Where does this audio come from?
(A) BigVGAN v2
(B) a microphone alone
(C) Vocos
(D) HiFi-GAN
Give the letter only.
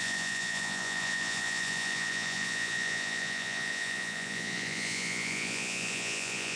C